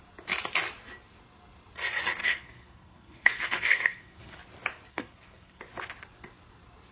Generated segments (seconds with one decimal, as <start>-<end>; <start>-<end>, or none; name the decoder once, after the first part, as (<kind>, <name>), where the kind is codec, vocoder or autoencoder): 2.2-4.4 (codec, SNAC); 4.9-5.6